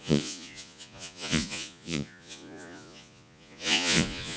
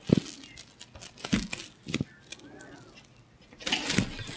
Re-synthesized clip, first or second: first